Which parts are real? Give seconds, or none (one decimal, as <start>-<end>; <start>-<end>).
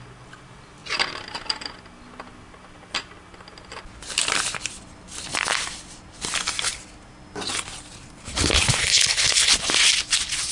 0.0-8.8; 9.5-10.5